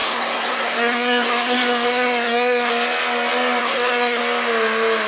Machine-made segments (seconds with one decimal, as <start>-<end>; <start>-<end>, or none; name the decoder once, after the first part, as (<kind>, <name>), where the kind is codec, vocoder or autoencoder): 0.0-2.7 (codec, SNAC); 3.6-4.2